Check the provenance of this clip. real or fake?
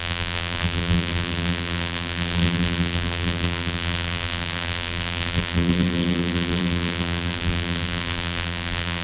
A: fake